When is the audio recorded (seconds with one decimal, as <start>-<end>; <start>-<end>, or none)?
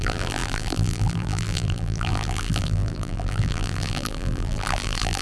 none